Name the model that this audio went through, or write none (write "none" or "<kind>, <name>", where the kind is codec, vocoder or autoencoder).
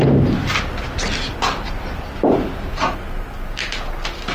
none